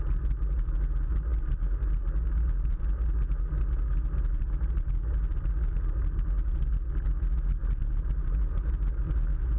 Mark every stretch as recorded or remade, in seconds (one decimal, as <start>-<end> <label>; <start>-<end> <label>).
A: 0.0-9.6 recorded

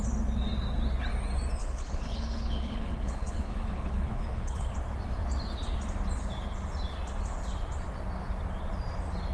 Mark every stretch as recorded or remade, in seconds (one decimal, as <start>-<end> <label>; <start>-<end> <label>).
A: 0.0-1.6 recorded; 1.6-4.7 remade; 4.7-9.3 recorded

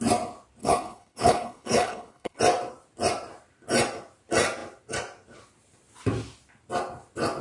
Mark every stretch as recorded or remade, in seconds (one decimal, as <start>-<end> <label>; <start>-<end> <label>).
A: 0.0-0.6 recorded; 0.6-2.4 remade; 2.4-7.4 recorded